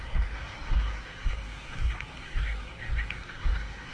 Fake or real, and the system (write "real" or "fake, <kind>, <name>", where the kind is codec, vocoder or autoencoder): fake, codec, SNAC